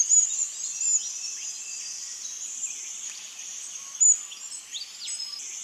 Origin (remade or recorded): recorded